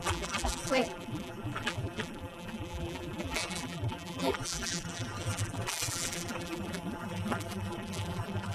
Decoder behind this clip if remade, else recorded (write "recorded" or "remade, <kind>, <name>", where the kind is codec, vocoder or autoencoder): remade, vocoder, BigVGAN v2